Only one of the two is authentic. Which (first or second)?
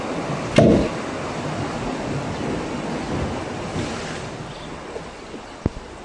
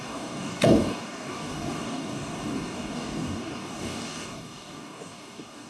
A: first